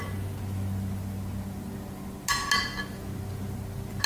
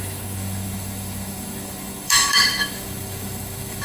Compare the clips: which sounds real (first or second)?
first